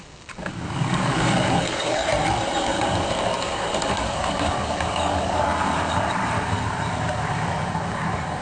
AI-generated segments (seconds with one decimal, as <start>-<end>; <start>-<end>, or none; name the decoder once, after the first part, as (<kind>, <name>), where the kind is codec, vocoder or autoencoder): 0.0-2.0 (codec, DAC); 2.6-8.4